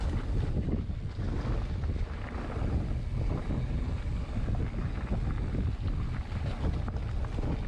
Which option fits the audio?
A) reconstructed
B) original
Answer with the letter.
B